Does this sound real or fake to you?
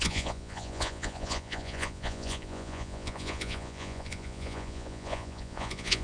fake